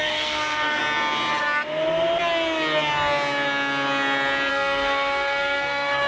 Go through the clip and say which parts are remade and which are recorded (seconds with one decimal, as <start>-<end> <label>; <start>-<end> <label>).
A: 0.0-0.8 remade; 0.8-4.5 recorded; 4.5-6.1 remade